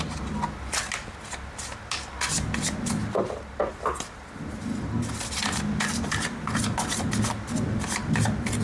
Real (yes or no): yes